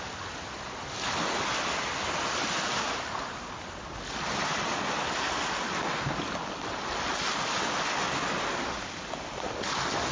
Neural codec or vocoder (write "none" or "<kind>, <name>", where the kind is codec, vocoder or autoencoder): none